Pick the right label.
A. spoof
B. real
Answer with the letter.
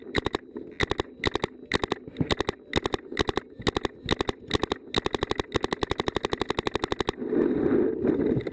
B